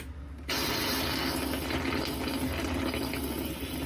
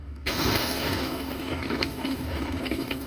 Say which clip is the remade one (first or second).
second